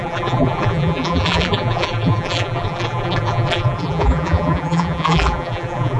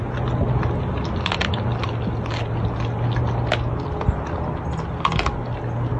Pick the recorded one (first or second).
second